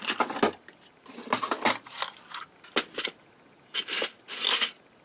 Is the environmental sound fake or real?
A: real